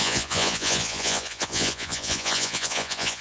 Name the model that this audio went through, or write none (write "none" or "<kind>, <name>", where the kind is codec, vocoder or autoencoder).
vocoder, Vocos